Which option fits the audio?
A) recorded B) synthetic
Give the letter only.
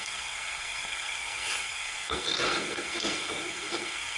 B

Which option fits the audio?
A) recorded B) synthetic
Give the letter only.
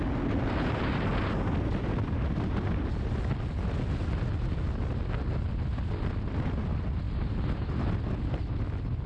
A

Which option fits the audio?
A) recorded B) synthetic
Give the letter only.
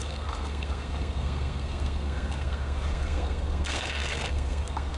B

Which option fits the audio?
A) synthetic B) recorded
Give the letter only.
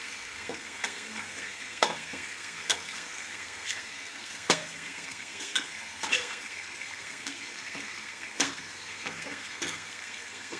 A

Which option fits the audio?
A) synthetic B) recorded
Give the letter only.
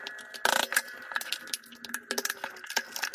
B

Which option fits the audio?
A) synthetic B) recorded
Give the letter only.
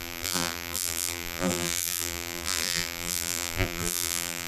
A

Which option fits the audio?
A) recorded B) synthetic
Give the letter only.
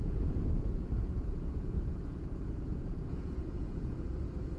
B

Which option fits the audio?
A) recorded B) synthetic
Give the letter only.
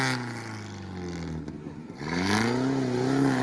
A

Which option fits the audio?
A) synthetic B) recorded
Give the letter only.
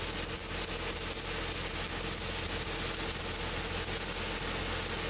B